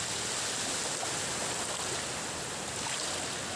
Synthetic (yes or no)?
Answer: no